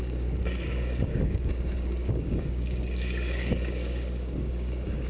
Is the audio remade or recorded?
remade